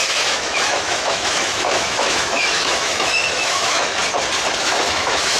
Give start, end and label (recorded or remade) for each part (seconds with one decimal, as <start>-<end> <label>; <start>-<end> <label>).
0.0-4.0 remade; 4.0-4.6 recorded; 4.6-5.4 remade